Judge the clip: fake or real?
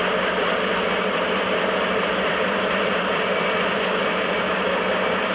fake